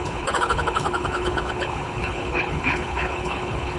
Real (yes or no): no